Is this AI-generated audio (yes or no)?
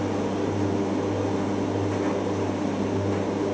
no